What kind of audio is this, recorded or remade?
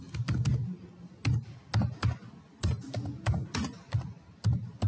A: recorded